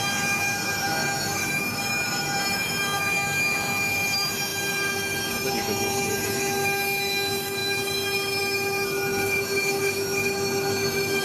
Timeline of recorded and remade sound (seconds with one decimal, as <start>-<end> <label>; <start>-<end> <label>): 0.0-11.2 remade